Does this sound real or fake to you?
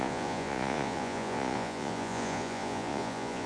fake